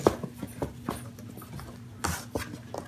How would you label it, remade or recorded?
recorded